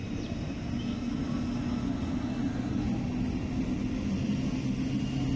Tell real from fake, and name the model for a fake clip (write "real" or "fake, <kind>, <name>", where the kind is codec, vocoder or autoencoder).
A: real